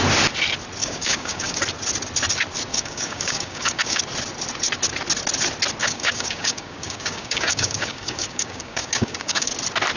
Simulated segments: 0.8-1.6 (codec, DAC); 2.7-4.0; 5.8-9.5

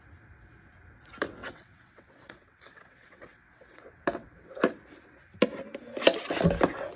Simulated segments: 1.4-4.6 (vocoder, WaveNeXt)

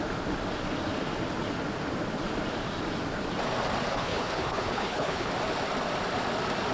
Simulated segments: 3.9-5.3 (codec, HILCodec)

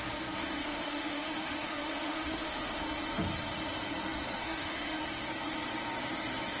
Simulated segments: 0.6-2.8 (autoencoder, DAC-VAE); 4.4-5.0

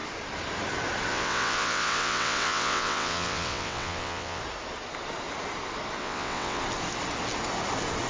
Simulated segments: 1.1-4.4 (vocoder, WaveNeXt); 6.0-6.6

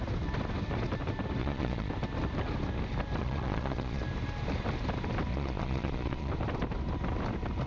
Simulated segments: 1.4-1.9 (vocoder, Vocos); 3.2-4.0; 5.3-6.3

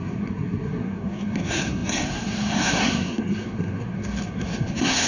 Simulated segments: 0.0-5.1 (codec, SNAC)

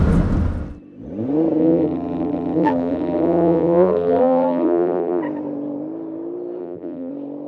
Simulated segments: 1.6-5.2 (vocoder, BigVGAN v2); 6.6-7.1